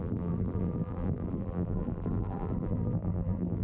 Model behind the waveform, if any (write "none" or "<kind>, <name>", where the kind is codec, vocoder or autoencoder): vocoder, BigVGAN v2